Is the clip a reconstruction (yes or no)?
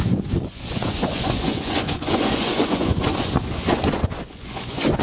yes